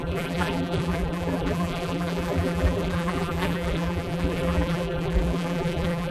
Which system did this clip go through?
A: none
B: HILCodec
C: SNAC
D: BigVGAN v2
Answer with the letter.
D